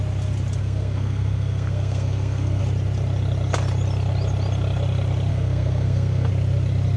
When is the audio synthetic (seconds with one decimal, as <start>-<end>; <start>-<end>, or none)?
0.6-2.6; 5.3-6.3